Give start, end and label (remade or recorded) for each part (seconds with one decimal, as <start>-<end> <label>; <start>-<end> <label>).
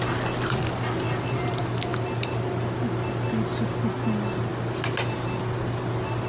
0.0-6.3 recorded